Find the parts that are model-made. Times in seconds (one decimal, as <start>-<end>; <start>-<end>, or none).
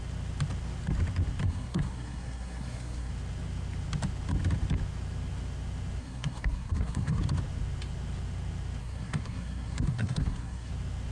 1.4-3.1; 6.0-7.2; 8.8-10.7